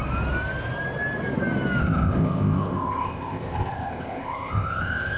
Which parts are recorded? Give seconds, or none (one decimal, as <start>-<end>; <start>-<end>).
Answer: 0.0-1.8